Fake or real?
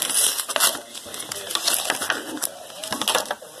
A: real